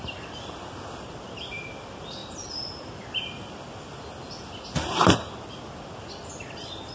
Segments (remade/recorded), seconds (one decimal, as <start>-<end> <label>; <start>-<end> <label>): 0.0-6.9 recorded